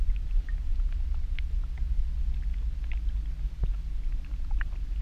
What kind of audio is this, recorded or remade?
recorded